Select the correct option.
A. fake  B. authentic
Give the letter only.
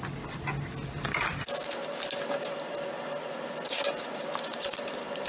B